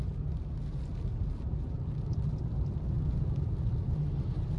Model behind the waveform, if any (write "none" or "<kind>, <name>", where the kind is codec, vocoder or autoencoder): none